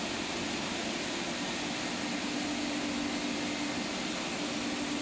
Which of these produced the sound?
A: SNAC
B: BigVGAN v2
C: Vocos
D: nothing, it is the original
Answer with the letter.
D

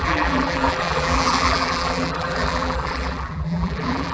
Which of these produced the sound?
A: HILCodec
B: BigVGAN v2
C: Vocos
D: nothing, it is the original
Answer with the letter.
B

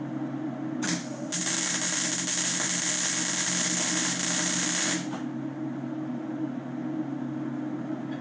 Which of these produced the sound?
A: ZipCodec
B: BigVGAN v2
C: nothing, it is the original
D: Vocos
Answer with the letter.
C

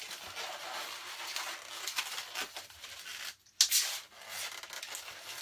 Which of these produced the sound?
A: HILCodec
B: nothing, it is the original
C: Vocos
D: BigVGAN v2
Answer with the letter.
B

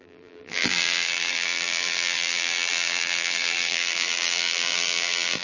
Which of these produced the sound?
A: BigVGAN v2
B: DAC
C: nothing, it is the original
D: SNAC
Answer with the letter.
A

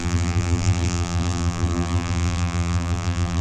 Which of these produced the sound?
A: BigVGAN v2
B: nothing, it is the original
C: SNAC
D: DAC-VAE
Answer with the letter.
A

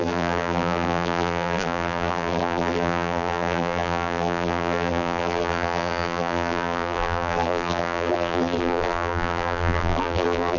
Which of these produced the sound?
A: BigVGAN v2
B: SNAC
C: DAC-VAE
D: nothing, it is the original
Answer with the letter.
A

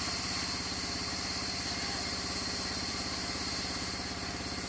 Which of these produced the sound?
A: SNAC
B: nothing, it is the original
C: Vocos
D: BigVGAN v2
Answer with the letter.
D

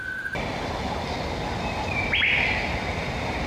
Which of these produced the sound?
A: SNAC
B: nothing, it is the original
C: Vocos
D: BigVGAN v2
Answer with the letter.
B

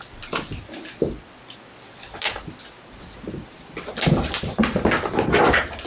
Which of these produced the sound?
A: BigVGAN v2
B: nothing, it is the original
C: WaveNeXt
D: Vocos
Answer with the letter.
B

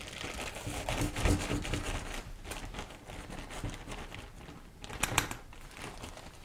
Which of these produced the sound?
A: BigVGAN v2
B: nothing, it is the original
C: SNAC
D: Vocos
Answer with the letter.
B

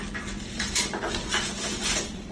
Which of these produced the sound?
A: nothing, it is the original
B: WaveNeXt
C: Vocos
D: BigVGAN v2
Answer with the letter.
D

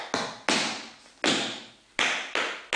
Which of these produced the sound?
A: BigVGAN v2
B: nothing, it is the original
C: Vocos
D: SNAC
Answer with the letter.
B